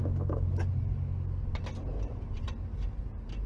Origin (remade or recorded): recorded